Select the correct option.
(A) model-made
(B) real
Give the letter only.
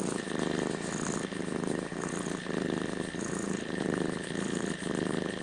B